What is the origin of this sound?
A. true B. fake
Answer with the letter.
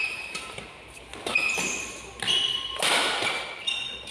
A